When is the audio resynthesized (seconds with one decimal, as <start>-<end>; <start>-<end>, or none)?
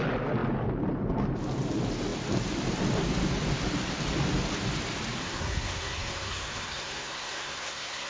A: 5.2-8.1